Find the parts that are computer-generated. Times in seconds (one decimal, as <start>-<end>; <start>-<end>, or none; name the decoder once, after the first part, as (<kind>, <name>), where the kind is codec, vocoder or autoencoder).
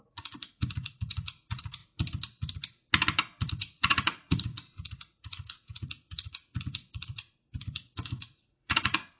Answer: 0.0-1.8 (vocoder, Vocos); 3.5-9.2